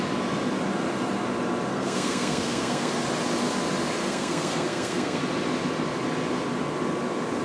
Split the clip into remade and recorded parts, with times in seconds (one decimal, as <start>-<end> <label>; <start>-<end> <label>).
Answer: 0.0-1.7 recorded; 1.7-2.9 remade; 2.9-4.0 recorded; 4.0-5.2 remade; 5.2-7.4 recorded